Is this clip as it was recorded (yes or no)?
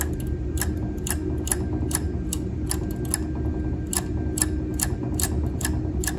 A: yes